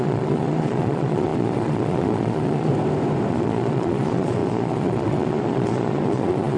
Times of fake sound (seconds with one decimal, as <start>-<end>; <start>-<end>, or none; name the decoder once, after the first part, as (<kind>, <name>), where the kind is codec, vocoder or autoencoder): 0.0-2.7 (vocoder, Vocos); 3.3-6.6